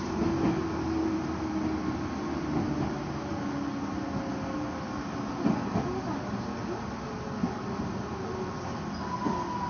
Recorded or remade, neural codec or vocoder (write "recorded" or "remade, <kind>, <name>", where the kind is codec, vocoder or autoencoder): recorded